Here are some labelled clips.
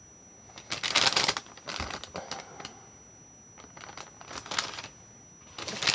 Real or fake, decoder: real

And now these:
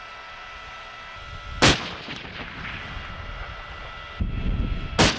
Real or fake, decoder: real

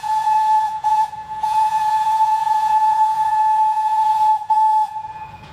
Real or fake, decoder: fake, vocoder, Vocos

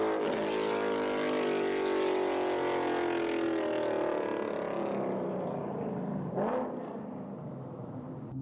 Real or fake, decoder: real